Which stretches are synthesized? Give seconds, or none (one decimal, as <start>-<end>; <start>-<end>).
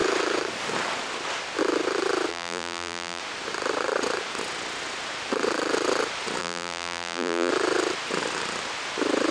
2.3-3.2; 6.4-7.5